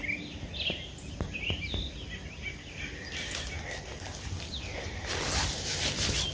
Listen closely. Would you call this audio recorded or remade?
recorded